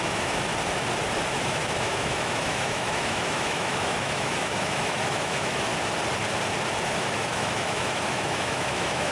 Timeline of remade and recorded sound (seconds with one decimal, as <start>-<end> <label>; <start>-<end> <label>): 0.0-0.5 remade; 0.5-1.3 recorded; 1.3-5.7 remade; 5.7-7.0 recorded; 7.0-9.1 remade